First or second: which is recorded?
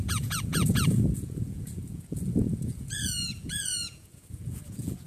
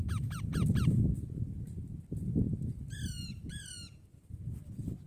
second